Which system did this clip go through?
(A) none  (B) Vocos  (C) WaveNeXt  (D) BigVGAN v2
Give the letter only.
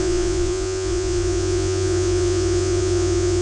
B